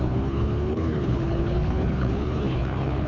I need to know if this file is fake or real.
fake